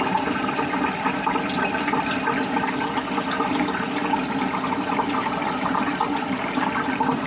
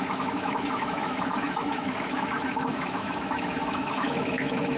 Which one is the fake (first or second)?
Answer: second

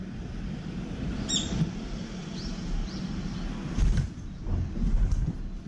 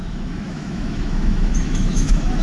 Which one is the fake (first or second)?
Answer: second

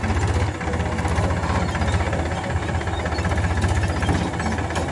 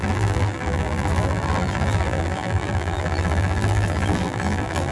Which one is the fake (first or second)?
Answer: second